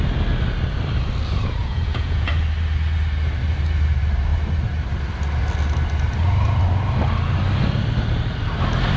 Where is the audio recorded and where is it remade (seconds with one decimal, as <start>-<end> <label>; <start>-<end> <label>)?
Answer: 0.0-1.6 recorded; 1.6-2.3 remade; 2.3-9.0 recorded